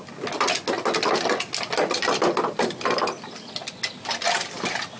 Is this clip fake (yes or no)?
no